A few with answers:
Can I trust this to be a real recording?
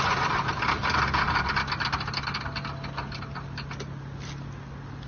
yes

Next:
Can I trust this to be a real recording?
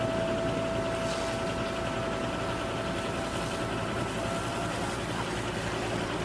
yes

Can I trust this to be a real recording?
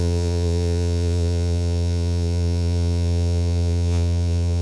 no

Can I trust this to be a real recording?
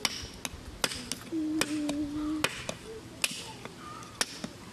yes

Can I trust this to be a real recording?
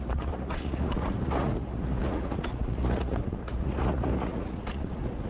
no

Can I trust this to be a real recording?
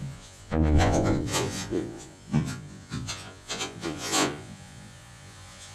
no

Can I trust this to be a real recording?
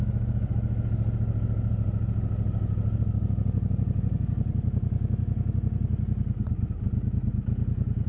yes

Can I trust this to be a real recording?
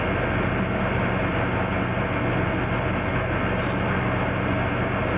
yes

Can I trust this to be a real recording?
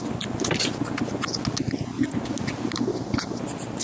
yes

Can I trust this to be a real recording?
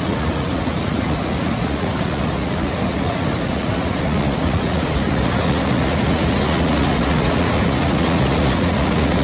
no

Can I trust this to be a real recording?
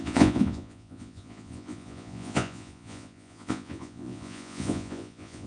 no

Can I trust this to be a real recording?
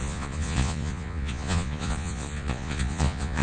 no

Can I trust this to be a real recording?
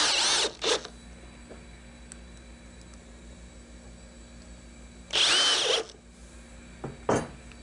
yes